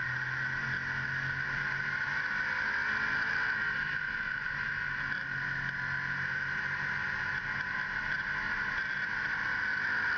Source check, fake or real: real